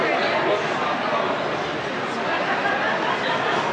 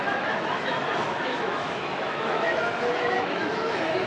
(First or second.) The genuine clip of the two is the first